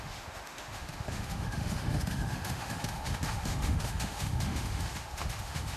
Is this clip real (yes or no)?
no